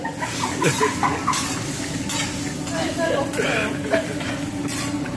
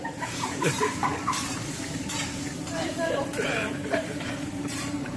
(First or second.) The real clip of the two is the first